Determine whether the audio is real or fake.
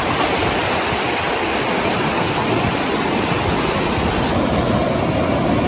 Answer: real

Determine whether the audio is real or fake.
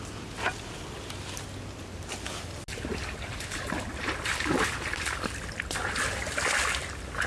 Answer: real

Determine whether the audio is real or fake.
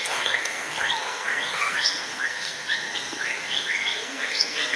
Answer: fake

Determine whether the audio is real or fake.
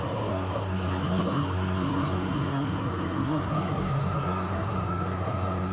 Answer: fake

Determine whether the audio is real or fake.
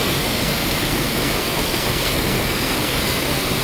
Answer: fake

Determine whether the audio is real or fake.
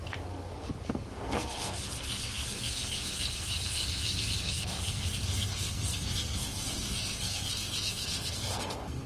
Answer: fake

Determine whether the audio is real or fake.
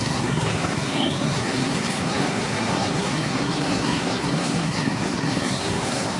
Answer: fake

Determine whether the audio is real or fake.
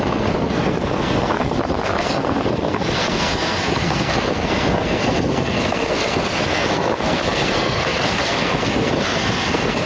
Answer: fake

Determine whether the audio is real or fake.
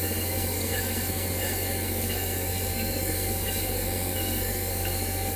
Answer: fake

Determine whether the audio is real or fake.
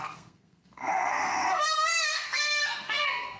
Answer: fake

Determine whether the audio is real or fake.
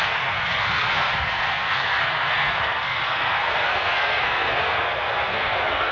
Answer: fake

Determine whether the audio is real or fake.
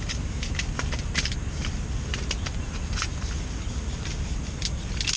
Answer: real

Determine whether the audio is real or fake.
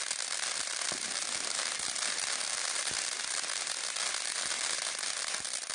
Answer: real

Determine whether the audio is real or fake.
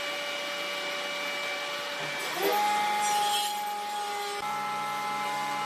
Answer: real